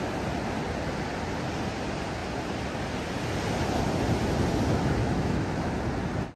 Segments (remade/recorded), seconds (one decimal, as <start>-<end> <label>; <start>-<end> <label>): 0.0-5.0 recorded; 5.0-5.7 remade; 5.7-6.4 recorded